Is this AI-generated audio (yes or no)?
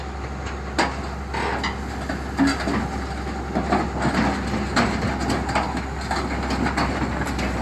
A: no